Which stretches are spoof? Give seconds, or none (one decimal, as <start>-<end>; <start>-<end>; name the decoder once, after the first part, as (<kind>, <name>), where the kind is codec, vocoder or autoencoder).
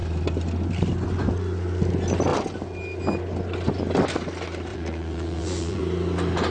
4.7-5.8 (vocoder, Vocos)